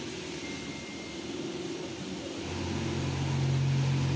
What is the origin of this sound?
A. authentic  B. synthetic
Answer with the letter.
A